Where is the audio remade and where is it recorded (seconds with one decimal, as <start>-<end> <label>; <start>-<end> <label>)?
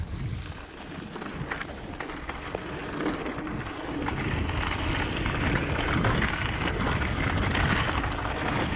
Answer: 0.0-2.8 remade; 2.8-4.0 recorded; 4.0-5.6 remade; 5.6-6.7 recorded; 6.7-8.8 remade